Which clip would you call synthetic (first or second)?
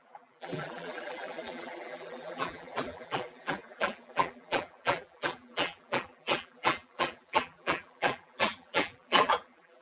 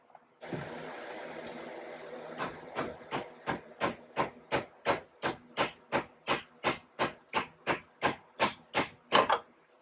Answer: first